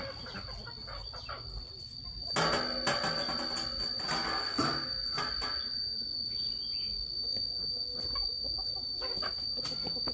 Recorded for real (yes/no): yes